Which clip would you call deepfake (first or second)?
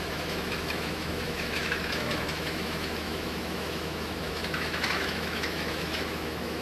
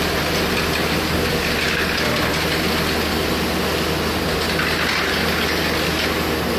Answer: first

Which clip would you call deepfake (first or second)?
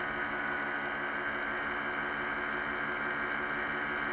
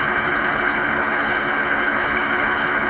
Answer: second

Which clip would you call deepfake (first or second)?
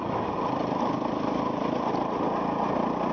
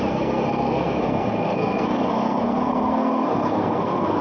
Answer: second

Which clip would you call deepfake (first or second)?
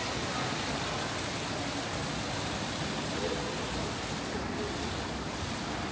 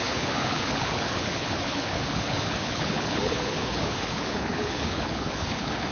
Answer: second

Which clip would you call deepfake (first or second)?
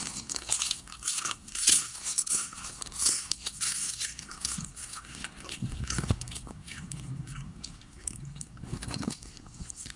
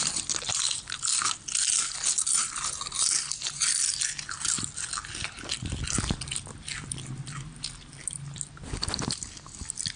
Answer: first